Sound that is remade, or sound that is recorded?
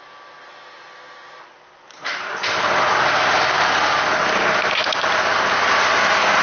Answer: recorded